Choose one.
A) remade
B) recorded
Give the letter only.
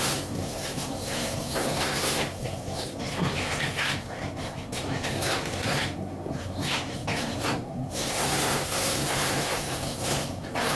A